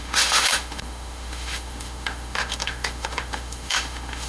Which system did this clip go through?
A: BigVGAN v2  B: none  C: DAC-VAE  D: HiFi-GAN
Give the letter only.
C